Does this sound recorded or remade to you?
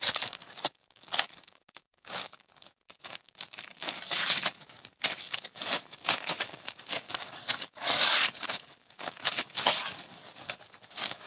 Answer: remade